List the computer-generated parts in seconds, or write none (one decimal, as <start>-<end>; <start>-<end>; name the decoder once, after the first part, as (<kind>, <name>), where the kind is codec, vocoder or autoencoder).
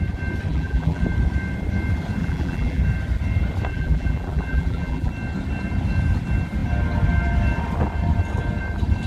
0.5-1.0 (vocoder, BigVGAN v2); 2.2-2.8; 3.7-5.1